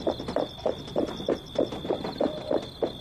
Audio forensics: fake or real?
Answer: real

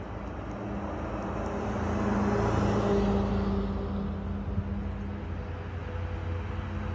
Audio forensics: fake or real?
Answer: real